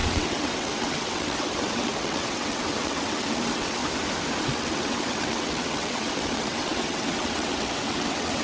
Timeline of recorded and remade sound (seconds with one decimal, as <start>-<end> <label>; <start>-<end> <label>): 0.0-3.8 remade; 3.8-4.4 recorded; 4.4-8.4 remade